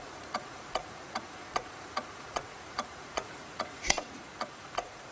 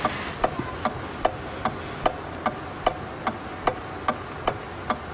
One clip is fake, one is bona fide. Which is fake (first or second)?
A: first